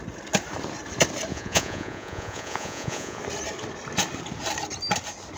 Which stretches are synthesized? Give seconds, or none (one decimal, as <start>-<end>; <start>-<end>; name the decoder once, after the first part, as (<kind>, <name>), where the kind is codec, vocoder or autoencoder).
1.3-3.2 (vocoder, Vocos)